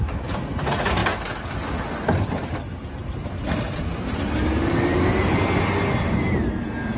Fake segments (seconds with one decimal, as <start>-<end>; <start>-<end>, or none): none